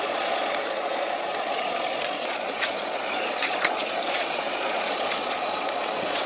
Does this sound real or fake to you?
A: fake